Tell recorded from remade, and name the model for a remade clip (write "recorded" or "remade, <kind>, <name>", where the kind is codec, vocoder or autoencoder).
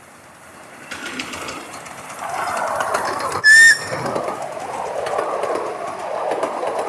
recorded